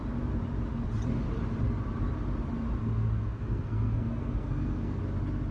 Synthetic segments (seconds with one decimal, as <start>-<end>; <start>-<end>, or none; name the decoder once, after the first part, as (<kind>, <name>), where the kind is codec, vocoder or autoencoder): 2.8-5.0 (codec, SNAC)